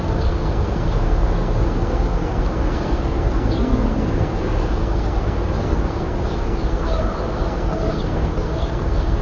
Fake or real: fake